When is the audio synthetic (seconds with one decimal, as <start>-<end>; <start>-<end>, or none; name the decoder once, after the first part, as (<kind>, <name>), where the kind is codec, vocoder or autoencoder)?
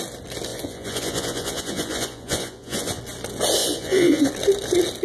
0.5-3.0 (vocoder, Vocos); 3.6-4.3